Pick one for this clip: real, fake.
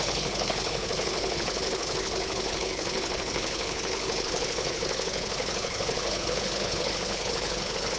fake